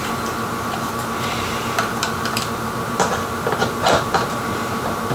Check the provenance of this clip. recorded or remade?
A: remade